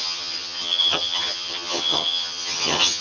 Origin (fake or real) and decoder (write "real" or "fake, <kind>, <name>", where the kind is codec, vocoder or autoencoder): fake, vocoder, HiFi-GAN